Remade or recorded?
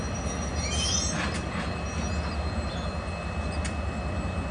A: recorded